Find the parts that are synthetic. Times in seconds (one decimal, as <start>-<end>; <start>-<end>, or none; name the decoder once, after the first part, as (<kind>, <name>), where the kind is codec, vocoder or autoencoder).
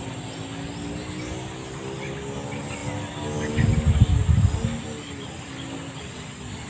none